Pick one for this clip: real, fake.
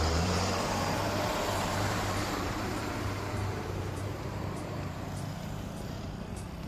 fake